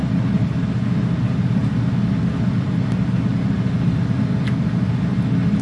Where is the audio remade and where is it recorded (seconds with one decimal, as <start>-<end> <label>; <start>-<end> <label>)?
0.0-5.6 recorded